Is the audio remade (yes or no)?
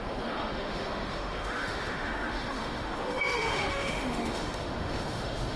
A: yes